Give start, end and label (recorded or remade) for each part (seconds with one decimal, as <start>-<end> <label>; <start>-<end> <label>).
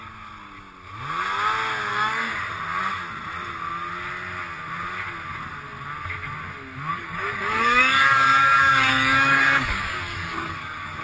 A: 0.0-1.9 recorded; 1.9-2.4 remade; 2.4-6.9 recorded; 6.9-11.0 remade